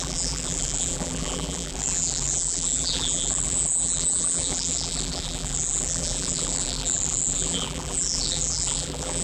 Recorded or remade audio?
remade